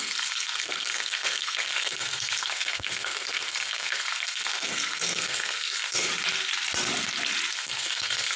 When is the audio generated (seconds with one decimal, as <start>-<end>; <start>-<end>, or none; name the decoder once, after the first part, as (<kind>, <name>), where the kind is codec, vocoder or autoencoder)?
0.0-6.1 (codec, SNAC); 7.5-8.4